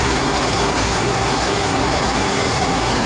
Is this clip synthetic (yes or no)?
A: yes